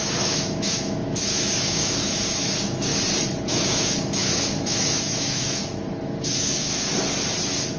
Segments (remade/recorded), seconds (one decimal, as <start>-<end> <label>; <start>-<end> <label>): 0.0-2.9 remade; 2.9-3.5 recorded; 3.5-6.9 remade; 6.9-7.8 recorded